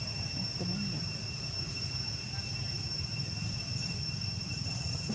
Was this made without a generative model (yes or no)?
no